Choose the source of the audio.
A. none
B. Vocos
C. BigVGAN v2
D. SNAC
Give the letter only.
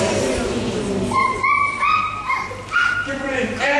C